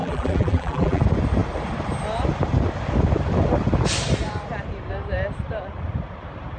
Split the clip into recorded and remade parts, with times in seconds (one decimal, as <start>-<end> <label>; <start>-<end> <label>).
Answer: 0.0-1.0 remade; 1.0-6.6 recorded